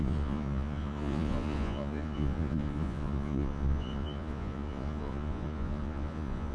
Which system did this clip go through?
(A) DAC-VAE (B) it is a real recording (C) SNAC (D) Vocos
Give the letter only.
D